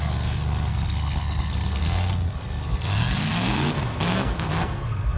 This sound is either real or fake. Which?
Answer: fake